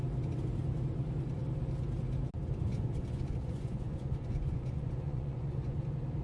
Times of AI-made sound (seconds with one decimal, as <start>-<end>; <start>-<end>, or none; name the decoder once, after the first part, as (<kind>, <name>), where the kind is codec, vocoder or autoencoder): 2.7-5.8 (vocoder, Vocos)